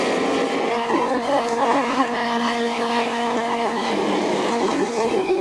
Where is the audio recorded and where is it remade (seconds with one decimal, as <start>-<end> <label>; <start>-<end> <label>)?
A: 0.0-0.7 recorded; 0.7-3.9 remade; 3.9-4.5 recorded; 4.5-5.4 remade